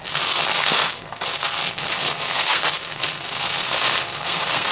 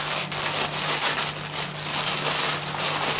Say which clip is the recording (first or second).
second